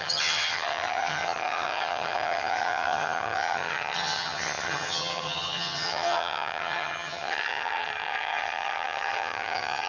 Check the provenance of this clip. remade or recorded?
remade